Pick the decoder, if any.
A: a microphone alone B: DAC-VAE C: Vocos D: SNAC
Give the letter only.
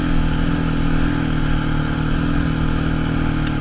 A